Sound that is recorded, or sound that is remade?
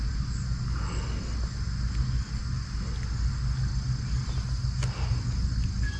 recorded